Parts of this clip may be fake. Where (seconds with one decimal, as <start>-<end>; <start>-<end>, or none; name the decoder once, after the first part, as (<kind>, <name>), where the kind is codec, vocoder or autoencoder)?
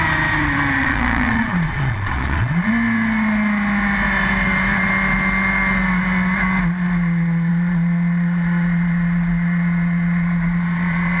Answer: 0.8-2.7 (vocoder, Vocos); 7.5-11.2